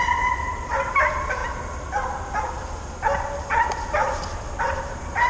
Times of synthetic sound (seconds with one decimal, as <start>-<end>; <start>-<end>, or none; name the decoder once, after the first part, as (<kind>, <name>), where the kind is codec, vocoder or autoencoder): 0.0-1.4 (vocoder, BigVGAN v2); 4.6-5.3